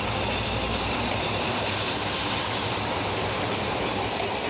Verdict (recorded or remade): remade